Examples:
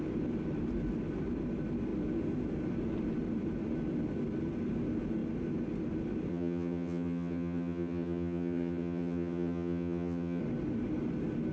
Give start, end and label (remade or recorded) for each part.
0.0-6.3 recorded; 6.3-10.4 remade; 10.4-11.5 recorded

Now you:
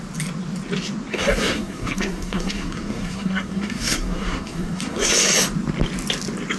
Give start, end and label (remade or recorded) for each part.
0.0-1.1 recorded; 1.1-5.1 remade; 5.1-6.6 recorded

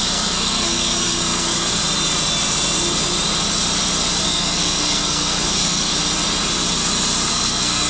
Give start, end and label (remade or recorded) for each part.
0.0-1.8 remade; 1.8-4.2 recorded; 4.2-5.9 remade; 5.9-7.3 recorded; 7.3-7.9 remade

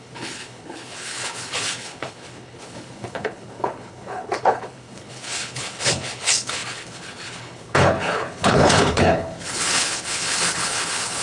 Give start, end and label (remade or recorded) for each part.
0.0-11.2 remade

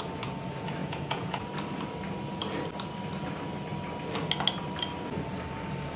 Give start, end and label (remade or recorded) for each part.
0.0-0.8 recorded; 0.8-1.4 remade; 1.4-6.0 recorded

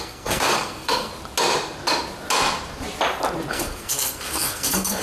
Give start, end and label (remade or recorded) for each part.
0.0-1.1 remade; 1.1-3.5 recorded; 3.5-5.0 remade